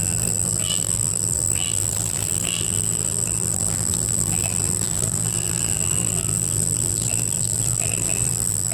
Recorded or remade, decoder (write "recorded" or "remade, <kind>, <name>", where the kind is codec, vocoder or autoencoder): remade, vocoder, BigVGAN v2